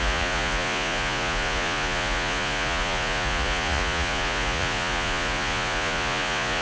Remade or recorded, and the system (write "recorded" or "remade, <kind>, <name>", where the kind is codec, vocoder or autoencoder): remade, vocoder, Vocos